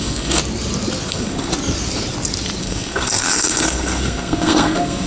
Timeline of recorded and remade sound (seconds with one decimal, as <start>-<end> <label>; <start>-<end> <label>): 0.0-0.4 remade; 0.4-1.1 recorded; 1.1-1.5 remade; 1.5-2.6 recorded; 2.6-5.1 remade